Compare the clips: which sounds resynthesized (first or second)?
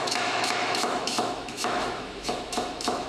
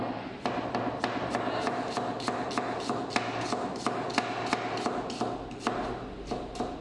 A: first